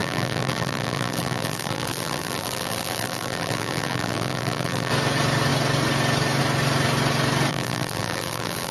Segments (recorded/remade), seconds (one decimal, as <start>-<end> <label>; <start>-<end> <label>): 0.0-4.9 remade; 4.9-7.5 recorded; 7.5-8.7 remade